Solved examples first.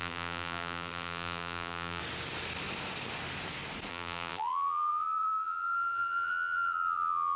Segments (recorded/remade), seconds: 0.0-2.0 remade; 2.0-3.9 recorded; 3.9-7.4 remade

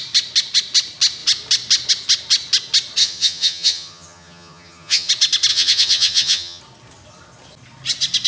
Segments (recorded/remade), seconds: 0.0-3.0 recorded; 3.0-5.1 remade; 5.1-5.5 recorded; 5.5-6.6 remade; 6.6-8.3 recorded

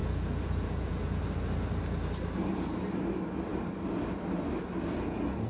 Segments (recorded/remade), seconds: 0.0-1.2 remade; 1.2-5.5 recorded

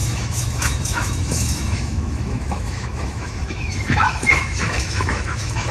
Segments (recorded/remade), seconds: 0.0-5.7 remade

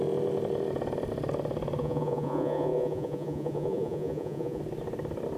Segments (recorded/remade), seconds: 0.0-1.8 recorded; 1.8-4.6 remade; 4.6-5.4 recorded